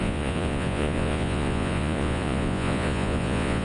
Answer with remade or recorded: remade